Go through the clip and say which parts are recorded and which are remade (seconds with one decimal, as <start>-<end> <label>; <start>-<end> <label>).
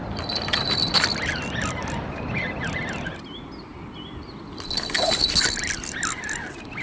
0.0-6.8 recorded